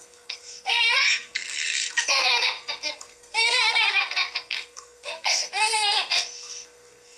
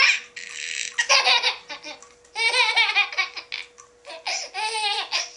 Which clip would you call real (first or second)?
second